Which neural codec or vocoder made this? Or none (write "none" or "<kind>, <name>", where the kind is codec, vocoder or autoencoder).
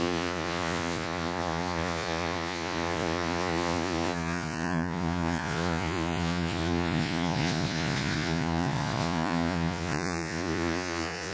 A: vocoder, Vocos